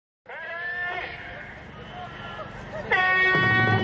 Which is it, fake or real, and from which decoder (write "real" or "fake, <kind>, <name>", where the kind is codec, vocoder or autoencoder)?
real